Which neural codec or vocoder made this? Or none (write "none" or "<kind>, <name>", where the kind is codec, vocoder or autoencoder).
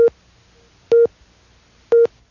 none